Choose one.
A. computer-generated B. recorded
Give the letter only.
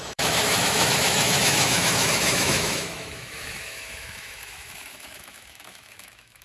A